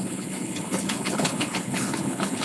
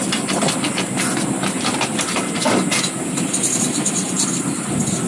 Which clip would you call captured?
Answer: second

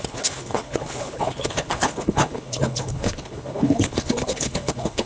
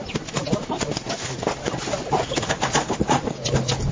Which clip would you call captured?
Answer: second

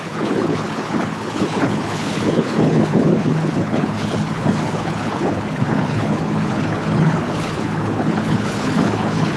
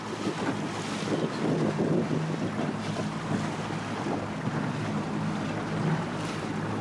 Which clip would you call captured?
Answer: second